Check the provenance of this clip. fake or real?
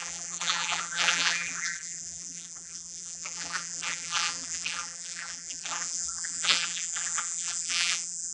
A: fake